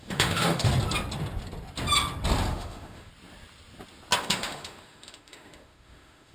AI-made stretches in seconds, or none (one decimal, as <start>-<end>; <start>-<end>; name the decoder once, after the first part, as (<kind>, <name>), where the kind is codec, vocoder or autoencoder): 0.0-0.7 (autoencoder, DAC-VAE); 2.5-3.1; 4.2-6.3